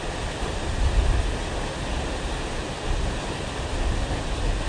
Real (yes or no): yes